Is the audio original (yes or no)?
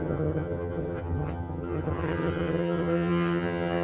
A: no